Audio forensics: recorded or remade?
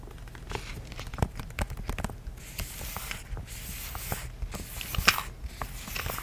recorded